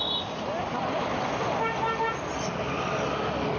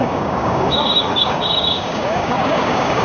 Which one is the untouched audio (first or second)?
first